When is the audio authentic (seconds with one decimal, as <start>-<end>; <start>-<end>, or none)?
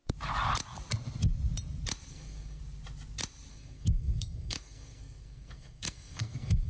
0.0-2.1; 2.6-3.5